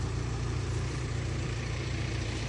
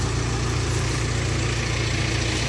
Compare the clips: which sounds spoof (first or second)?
first